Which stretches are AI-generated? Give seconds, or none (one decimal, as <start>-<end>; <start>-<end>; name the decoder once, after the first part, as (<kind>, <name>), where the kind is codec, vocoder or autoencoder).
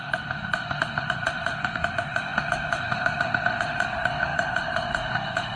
0.0-5.6 (autoencoder, DAC-VAE)